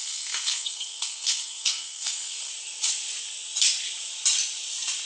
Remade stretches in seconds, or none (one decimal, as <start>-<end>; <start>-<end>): 0.0-2.5